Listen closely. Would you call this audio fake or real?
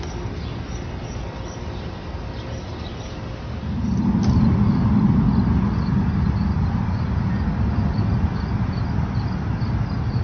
real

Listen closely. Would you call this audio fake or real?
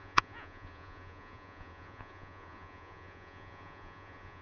fake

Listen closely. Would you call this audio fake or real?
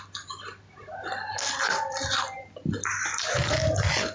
real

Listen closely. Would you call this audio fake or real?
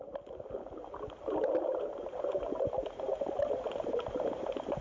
real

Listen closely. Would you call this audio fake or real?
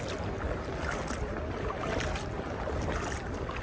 real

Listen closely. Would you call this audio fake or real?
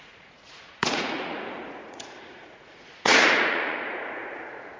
fake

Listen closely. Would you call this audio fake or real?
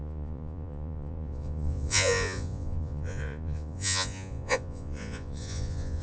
fake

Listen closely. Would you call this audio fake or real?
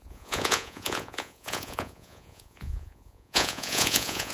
fake